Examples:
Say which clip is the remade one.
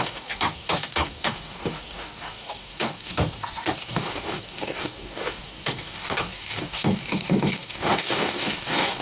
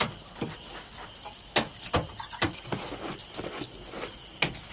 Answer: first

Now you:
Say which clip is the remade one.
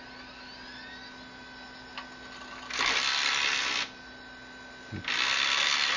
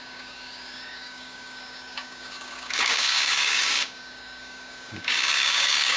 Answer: second